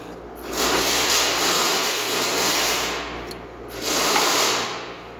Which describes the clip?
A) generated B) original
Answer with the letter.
B